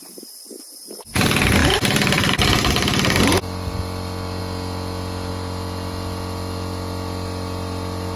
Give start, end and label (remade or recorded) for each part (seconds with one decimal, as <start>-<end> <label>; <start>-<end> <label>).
0.0-1.6 recorded; 1.6-4.4 remade; 4.4-8.2 recorded